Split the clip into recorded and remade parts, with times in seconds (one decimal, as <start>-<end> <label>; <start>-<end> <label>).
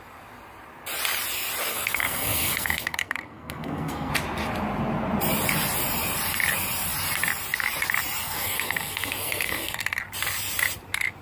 0.0-1.7 recorded; 1.7-4.1 remade; 4.1-8.2 recorded; 8.2-10.0 remade; 10.0-11.2 recorded